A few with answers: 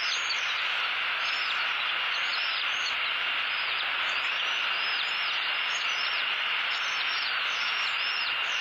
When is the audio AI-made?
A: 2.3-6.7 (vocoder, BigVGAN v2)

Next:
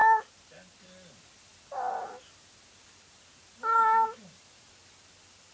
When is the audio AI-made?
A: none

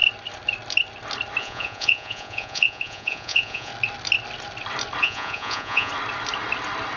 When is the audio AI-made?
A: 1.4-3.7 (vocoder, Vocos); 5.0-5.9

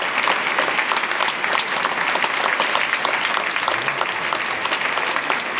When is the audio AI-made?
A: none

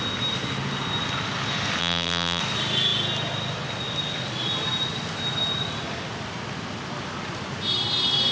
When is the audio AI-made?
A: 1.8-2.4 (vocoder, BigVGAN v2)

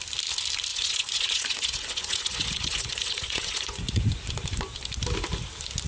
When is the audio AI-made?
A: 0.7-4.2 (vocoder, Vocos)